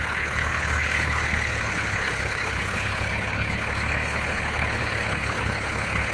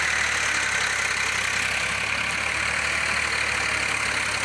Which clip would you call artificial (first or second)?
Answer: first